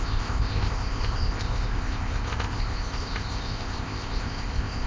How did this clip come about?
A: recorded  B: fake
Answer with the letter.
B